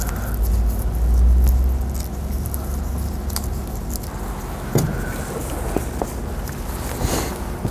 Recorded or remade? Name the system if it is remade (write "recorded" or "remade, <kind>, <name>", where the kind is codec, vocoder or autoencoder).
recorded